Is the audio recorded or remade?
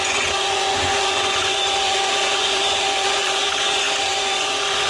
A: remade